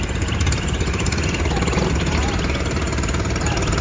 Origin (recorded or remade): remade